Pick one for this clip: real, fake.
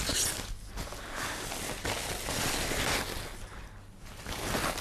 real